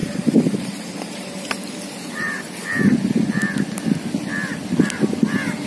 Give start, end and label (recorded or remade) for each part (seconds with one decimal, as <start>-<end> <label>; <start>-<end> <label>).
0.0-2.6 remade; 2.6-5.7 recorded